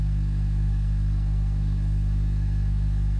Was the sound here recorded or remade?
remade